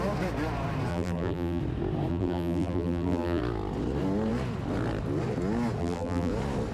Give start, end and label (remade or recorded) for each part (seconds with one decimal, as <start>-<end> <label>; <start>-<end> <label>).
0.0-0.9 recorded; 0.9-1.6 remade; 1.6-2.1 recorded; 2.1-3.4 remade; 3.4-5.8 recorded; 5.8-6.3 remade; 6.3-6.7 recorded